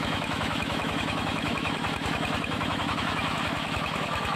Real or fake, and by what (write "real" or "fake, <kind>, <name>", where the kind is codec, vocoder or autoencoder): fake, autoencoder, DAC-VAE